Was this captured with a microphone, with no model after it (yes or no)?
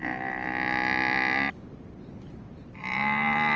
yes